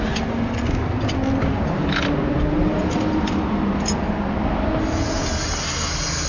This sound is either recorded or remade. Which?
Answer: recorded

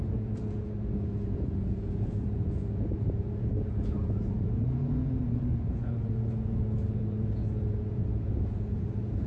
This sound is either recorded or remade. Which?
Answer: remade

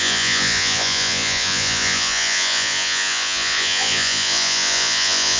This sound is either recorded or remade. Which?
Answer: remade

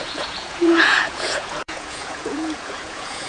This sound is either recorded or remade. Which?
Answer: remade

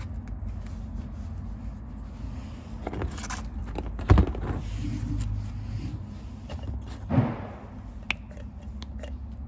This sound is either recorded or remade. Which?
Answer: recorded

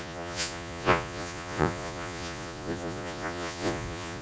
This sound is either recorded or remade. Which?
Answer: remade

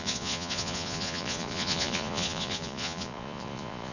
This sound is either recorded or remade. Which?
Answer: remade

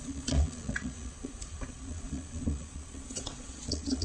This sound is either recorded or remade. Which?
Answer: remade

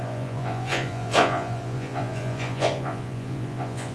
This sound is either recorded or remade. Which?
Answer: remade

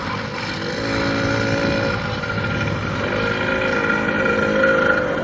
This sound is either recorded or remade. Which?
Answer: recorded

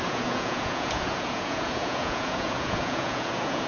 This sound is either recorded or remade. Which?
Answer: remade